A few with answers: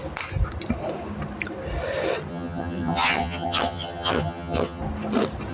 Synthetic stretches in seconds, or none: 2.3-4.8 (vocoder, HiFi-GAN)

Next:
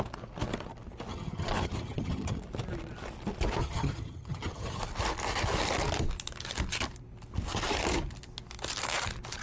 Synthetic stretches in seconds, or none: 1.1-2.4 (vocoder, HiFi-GAN); 3.6-4.8

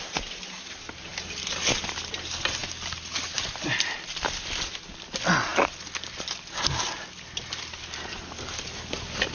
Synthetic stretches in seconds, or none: none

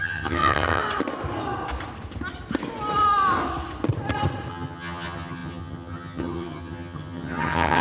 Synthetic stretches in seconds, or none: 0.0-0.8 (vocoder, HiFi-GAN); 4.5-7.8

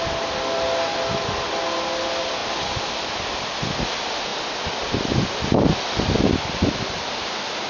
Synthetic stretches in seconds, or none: none

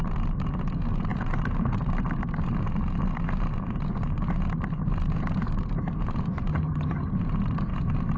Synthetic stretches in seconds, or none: 6.5-7.1 (vocoder, HiFi-GAN)